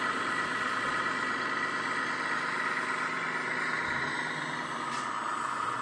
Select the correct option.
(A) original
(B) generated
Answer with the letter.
A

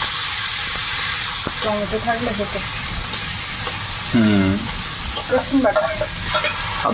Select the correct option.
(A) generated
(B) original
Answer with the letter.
B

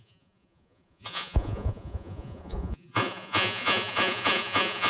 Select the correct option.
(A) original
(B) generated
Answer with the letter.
B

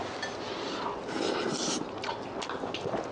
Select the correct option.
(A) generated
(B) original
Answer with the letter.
B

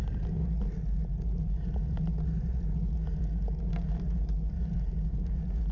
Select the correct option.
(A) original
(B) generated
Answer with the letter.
A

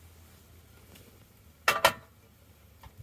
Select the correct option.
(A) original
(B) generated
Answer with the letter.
A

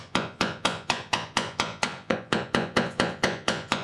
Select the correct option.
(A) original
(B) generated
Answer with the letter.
B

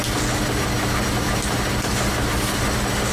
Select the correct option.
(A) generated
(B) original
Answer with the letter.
B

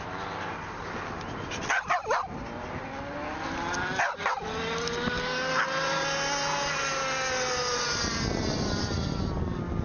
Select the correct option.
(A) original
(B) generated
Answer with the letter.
A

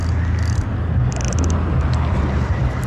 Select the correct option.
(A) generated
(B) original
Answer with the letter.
B